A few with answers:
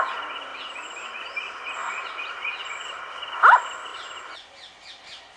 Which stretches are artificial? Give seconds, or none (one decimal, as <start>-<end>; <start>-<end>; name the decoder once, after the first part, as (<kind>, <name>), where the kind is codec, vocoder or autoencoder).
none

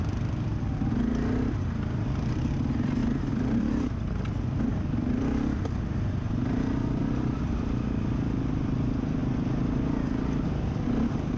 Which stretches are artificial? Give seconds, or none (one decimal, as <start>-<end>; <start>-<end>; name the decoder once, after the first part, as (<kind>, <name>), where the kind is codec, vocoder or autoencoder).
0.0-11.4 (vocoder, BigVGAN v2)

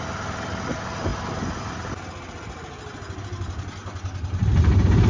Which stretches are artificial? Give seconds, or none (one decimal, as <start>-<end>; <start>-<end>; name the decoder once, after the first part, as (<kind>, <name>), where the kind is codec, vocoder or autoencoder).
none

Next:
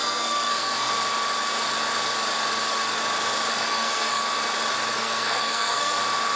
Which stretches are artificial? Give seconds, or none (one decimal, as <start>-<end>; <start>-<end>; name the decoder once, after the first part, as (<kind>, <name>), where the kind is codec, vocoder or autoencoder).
0.0-0.9 (codec, SNAC); 3.5-4.2; 4.9-6.0

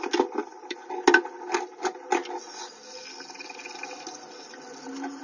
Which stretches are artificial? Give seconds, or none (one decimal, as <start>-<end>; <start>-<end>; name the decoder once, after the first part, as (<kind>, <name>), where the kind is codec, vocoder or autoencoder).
none

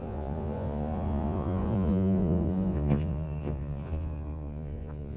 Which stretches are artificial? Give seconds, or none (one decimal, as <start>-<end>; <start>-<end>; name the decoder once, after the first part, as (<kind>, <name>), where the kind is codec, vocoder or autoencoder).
0.0-5.2 (vocoder, Vocos)